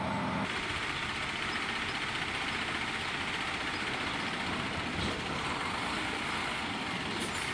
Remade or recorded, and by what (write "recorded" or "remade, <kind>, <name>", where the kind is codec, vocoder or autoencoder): recorded